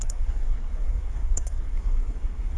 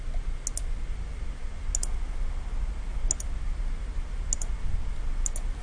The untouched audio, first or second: second